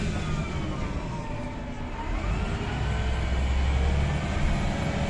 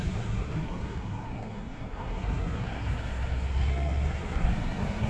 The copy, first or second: second